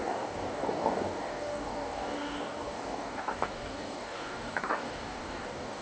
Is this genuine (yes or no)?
no